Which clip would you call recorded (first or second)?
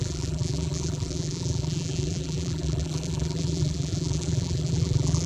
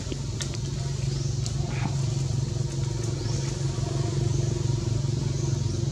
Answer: second